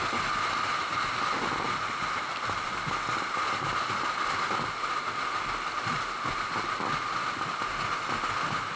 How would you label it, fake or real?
real